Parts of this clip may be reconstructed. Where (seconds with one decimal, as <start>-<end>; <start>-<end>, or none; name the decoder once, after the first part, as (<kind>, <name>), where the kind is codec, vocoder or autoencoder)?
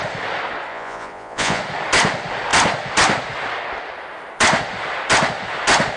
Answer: 0.7-1.6 (vocoder, Vocos)